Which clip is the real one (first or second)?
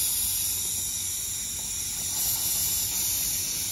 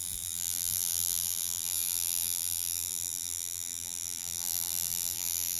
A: first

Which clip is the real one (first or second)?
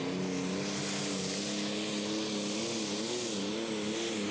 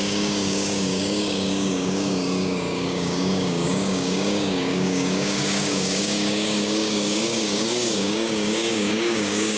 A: first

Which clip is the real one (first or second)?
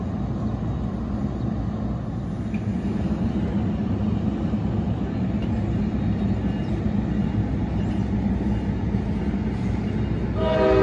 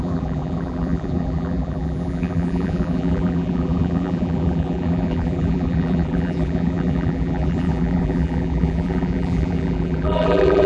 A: first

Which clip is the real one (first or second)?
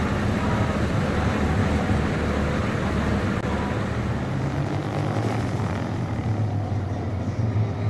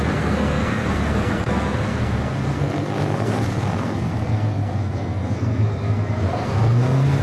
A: first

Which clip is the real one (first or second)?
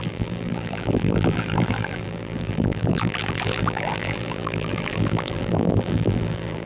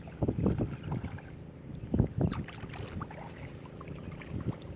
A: second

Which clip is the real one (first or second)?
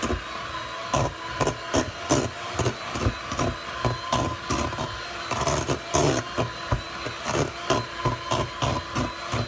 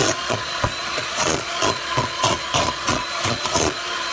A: first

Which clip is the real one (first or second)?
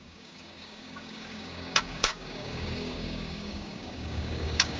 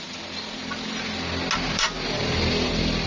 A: second